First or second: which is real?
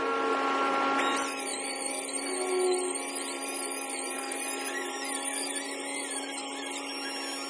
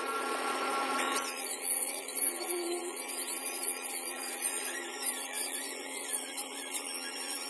first